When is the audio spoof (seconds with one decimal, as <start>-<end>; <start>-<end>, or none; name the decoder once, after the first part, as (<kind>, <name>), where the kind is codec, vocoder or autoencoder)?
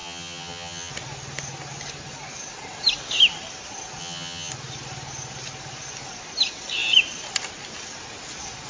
0.0-0.9 (vocoder, HiFi-GAN); 4.0-4.5